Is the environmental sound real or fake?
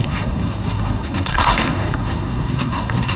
fake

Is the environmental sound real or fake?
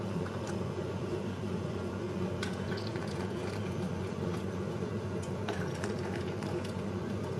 fake